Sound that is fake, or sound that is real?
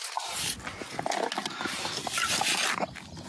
real